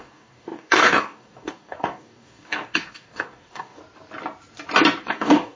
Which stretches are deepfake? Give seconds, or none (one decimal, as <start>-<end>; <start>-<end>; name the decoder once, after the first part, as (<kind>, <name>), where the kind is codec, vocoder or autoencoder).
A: 0.0-3.8 (codec, DAC); 5.0-5.6